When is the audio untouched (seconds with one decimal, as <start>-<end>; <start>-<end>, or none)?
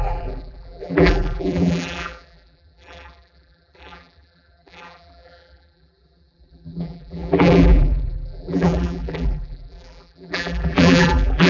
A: none